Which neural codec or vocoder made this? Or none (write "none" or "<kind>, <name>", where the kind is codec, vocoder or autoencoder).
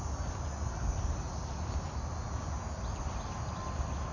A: none